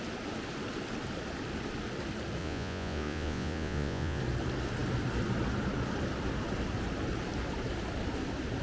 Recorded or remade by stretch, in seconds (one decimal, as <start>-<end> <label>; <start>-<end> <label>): 0.0-2.4 recorded; 2.4-4.2 remade; 4.2-8.6 recorded